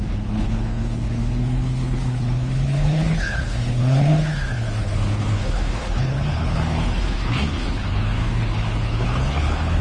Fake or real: fake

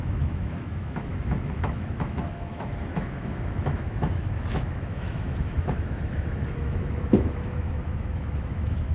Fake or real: fake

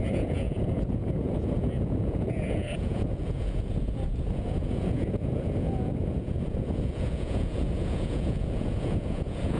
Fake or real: fake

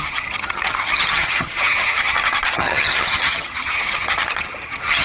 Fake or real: fake